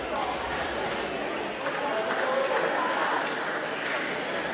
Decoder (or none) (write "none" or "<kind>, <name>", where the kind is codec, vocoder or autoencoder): none